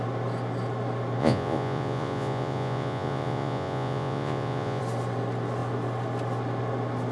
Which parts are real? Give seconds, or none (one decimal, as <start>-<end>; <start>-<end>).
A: 0.0-1.2; 4.8-7.1